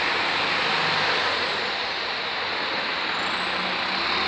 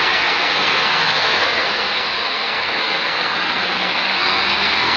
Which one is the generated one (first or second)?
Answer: second